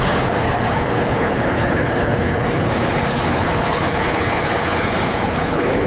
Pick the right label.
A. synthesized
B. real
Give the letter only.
A